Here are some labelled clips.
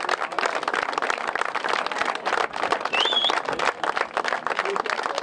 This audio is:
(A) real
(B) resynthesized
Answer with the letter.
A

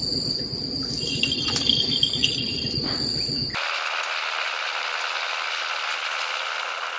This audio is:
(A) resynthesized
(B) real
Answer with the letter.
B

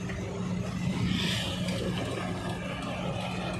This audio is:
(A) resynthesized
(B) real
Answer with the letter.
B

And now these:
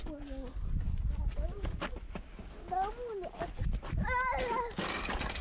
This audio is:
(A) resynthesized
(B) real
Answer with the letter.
B